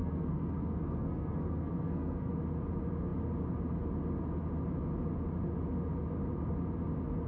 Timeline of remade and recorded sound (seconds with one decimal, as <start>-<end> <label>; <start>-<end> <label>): 0.0-2.3 remade; 2.3-7.3 recorded